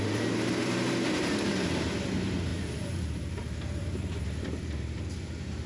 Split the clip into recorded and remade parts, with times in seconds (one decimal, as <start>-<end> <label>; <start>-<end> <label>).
0.0-5.7 remade